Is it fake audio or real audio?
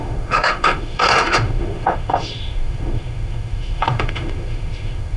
fake